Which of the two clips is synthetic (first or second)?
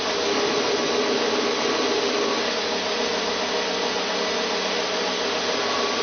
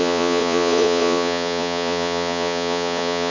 second